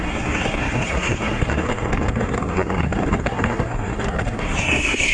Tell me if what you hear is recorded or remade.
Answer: remade